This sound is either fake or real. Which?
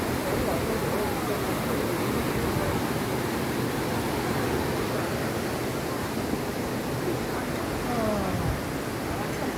real